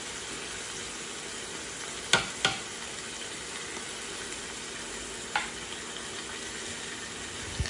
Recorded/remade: recorded